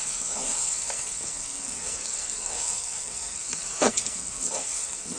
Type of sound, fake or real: fake